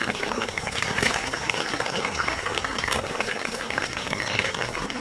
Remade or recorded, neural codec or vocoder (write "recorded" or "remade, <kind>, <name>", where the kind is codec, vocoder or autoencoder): remade, codec, SNAC